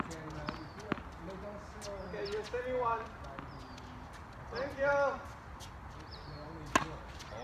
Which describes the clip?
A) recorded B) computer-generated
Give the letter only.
A